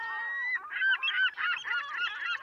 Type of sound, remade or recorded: recorded